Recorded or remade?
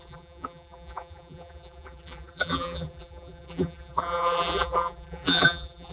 remade